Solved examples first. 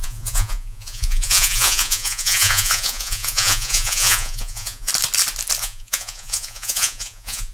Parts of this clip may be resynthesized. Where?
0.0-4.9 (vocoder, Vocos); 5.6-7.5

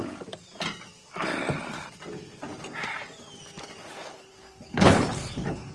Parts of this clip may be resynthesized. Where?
3.9-5.7 (codec, HILCodec)

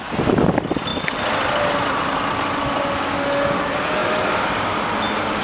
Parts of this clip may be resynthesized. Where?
none

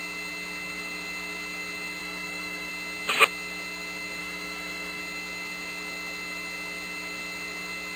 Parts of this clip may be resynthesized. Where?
2.0-2.7 (autoencoder, DAC-VAE); 4.2-5.0

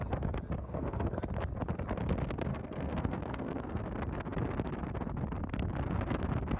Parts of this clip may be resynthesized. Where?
0.6-1.2 (codec, SNAC); 2.5-3.8

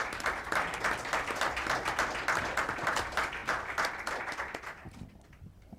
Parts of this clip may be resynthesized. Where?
none